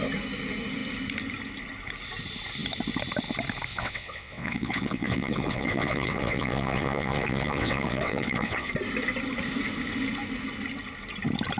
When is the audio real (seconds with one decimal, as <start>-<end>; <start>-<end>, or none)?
0.0-3.7; 8.7-11.6